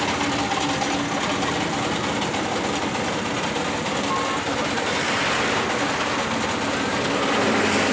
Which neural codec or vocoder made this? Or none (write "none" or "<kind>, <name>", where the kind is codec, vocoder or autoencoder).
none